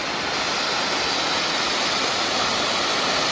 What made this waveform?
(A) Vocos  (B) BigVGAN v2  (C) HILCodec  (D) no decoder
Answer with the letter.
D